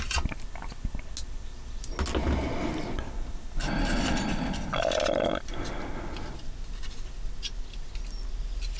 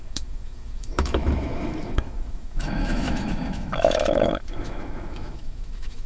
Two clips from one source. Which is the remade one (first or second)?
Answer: second